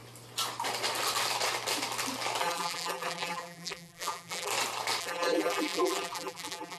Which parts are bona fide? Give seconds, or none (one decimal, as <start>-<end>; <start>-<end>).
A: 0.0-2.4; 4.5-5.0